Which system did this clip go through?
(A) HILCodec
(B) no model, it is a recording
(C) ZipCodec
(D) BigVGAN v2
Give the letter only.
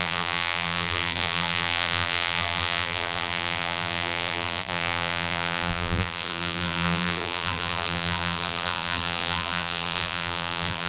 D